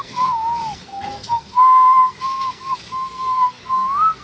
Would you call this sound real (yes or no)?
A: no